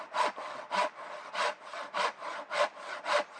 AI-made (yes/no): no